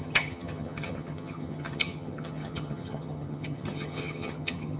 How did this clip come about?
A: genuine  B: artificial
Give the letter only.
B